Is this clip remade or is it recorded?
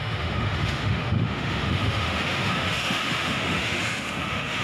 remade